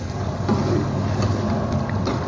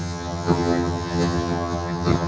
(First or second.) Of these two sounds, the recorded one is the first